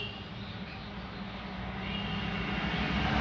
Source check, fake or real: real